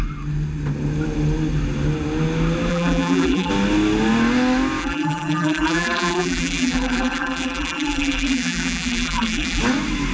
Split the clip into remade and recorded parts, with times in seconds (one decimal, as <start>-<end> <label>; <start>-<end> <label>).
0.0-2.7 recorded; 2.7-3.5 remade; 3.5-4.8 recorded; 4.8-9.6 remade; 9.6-10.1 recorded